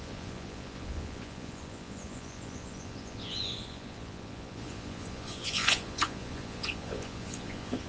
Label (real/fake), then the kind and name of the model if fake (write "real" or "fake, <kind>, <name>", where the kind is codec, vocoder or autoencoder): fake, vocoder, Vocos